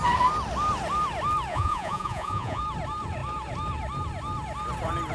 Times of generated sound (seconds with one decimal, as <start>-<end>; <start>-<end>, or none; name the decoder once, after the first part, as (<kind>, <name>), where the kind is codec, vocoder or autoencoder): 1.5-2.6 (vocoder, Vocos)